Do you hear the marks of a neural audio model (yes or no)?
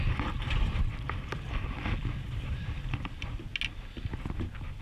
no